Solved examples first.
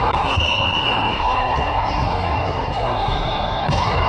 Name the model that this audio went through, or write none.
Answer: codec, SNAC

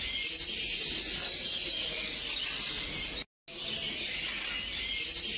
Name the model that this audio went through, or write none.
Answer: none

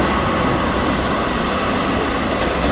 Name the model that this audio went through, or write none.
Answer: none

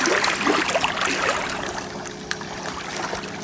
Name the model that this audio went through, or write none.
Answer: none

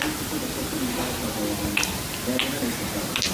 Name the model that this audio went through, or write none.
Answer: none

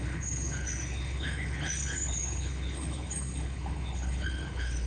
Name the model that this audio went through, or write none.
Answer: codec, HILCodec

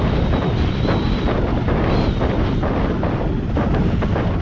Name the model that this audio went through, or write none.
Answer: none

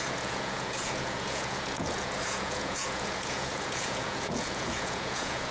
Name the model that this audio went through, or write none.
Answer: vocoder, Vocos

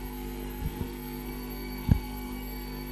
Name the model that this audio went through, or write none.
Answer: codec, SNAC